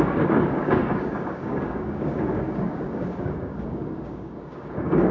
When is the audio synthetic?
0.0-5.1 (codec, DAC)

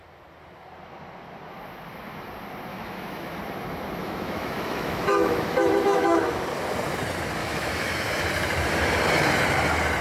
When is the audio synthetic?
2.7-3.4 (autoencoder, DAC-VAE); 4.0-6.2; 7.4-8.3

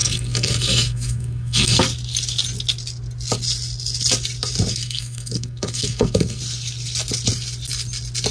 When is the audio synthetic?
0.0-1.8 (codec, SNAC); 4.7-6.4

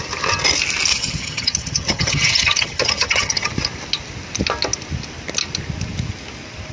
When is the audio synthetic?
0.9-3.5 (vocoder, HiFi-GAN)

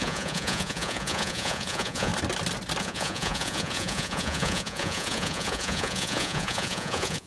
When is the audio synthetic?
0.0-2.1 (vocoder, Vocos); 2.8-7.3